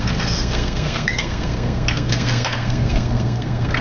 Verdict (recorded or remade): remade